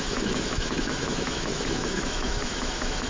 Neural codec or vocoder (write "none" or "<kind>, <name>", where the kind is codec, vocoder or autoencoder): autoencoder, DAC-VAE